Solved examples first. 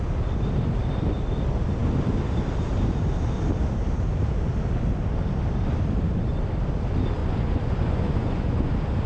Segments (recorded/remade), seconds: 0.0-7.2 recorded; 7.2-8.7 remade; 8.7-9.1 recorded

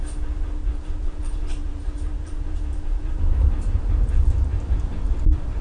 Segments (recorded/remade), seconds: 0.0-0.6 recorded; 0.6-1.2 remade; 1.2-1.6 recorded; 1.6-3.8 remade; 3.8-5.6 recorded

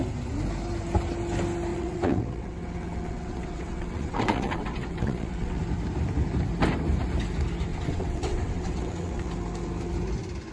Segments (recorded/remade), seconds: 0.0-1.7 recorded; 1.7-5.6 remade; 5.6-7.7 recorded; 7.7-9.3 remade; 9.3-10.5 recorded

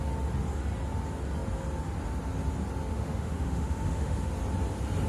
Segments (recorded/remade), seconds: 0.0-2.9 recorded; 2.9-4.3 remade; 4.3-5.1 recorded